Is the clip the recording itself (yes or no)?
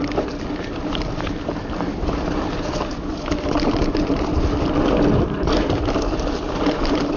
yes